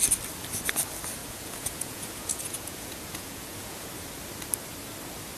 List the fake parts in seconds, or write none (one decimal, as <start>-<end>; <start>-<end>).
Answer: 1.2-3.9